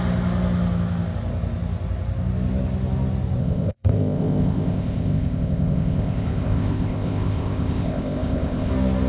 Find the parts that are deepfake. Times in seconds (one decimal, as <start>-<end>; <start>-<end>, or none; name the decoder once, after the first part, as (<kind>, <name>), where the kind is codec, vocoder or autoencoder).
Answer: 3.4-8.7 (codec, ZipCodec)